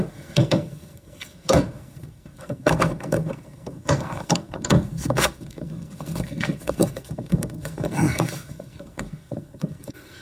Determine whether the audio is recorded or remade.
remade